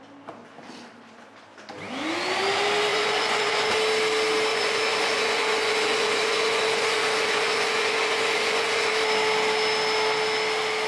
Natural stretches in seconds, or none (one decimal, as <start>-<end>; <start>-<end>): 0.0-2.9; 3.7-4.5; 8.9-10.9